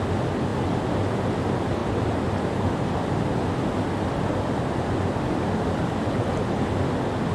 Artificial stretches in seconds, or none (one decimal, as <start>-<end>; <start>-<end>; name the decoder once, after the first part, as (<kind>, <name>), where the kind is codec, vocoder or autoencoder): 1.8-6.2 (vocoder, BigVGAN v2)